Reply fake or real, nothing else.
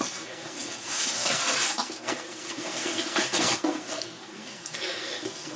fake